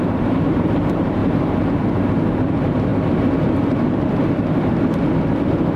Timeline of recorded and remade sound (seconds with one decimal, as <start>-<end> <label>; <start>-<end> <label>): 0.0-2.9 remade; 2.9-5.8 recorded